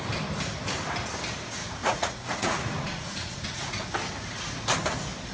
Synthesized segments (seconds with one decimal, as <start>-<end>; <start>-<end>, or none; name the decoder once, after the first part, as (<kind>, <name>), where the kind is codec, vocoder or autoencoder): 1.8-3.8 (vocoder, Vocos)